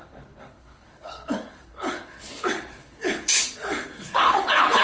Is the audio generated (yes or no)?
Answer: yes